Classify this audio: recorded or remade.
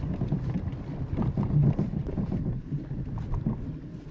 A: recorded